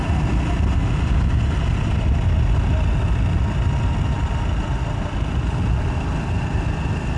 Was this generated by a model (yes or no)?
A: no